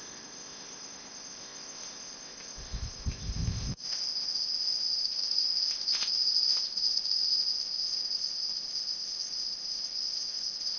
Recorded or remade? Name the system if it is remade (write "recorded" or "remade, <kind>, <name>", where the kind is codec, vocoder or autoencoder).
remade, codec, ZipCodec